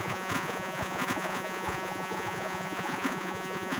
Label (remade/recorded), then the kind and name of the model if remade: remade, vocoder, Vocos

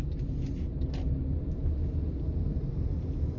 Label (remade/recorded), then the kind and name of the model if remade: recorded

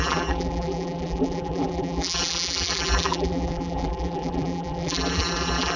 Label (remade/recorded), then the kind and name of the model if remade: remade, vocoder, BigVGAN v2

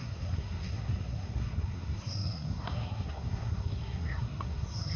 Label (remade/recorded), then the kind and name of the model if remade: remade, codec, SNAC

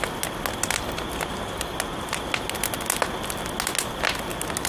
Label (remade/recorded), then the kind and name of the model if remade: recorded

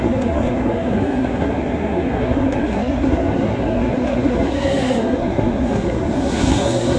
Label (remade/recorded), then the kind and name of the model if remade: remade, codec, SNAC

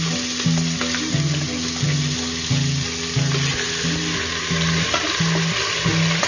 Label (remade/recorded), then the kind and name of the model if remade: recorded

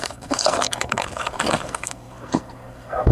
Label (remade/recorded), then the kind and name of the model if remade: remade, codec, SNAC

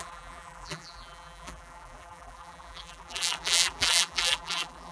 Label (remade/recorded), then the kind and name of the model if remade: remade, vocoder, BigVGAN v2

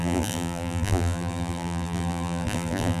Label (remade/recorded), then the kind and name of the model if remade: remade, vocoder, BigVGAN v2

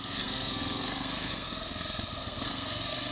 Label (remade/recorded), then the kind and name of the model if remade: remade, codec, SNAC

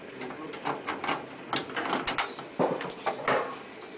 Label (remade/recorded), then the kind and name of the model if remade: recorded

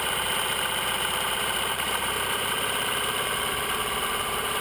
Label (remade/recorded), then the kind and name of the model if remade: remade, vocoder, BigVGAN v2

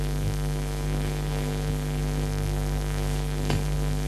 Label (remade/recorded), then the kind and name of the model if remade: remade, codec, SNAC